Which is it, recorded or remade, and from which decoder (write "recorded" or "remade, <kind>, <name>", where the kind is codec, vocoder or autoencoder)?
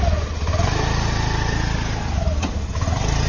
recorded